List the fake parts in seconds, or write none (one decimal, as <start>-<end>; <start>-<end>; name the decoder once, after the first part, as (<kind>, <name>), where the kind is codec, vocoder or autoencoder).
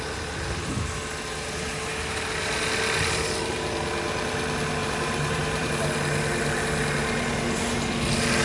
4.8-5.7 (vocoder, BigVGAN v2)